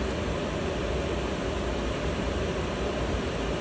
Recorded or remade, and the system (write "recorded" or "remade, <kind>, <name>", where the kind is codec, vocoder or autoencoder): recorded